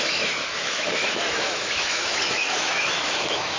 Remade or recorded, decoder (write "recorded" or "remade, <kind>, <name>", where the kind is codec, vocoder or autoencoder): remade, autoencoder, DAC-VAE